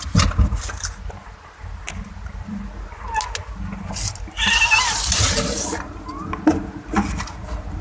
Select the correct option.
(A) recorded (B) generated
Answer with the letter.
A